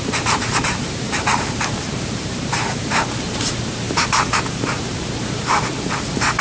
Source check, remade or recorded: remade